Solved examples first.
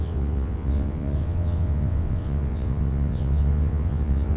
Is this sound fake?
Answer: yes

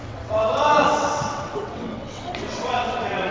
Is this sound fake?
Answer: yes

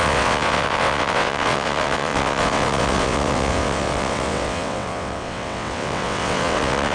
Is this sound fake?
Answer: yes